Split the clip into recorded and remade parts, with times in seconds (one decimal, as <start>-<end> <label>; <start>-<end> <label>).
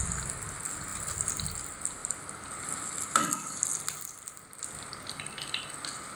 0.0-6.2 recorded